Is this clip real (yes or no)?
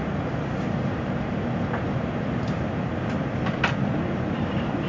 yes